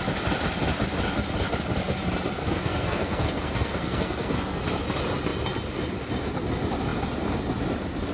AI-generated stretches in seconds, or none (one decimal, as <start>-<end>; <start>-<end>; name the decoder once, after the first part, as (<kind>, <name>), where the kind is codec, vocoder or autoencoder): 2.4-4.6 (codec, SNAC)